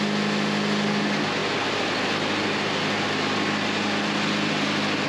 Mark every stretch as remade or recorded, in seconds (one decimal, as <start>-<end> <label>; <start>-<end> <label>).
0.0-5.1 recorded